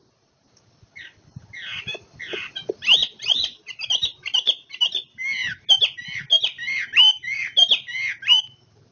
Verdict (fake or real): real